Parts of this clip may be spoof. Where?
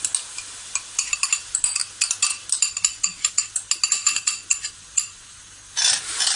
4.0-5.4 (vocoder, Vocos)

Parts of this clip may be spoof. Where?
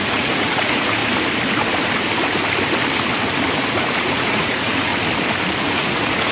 0.0-1.0 (vocoder, Vocos); 3.7-4.9; 5.6-6.3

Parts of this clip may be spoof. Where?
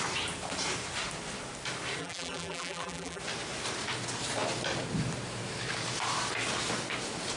2.0-3.2 (vocoder, BigVGAN v2)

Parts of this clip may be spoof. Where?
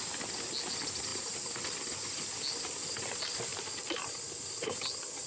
none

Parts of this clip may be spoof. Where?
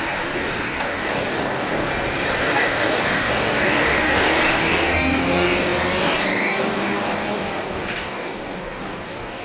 0.0-1.9 (codec, DAC); 2.4-9.4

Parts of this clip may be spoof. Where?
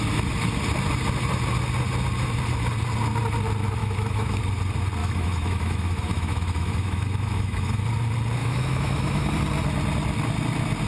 3.8-4.4 (autoencoder, DAC-VAE); 5.0-7.8; 8.4-9.3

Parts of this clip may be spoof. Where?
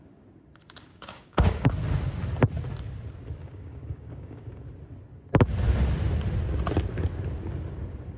0.9-1.7 (codec, DAC); 3.4-4.6